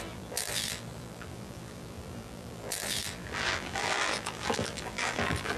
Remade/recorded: remade